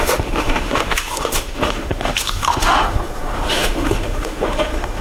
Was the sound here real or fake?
fake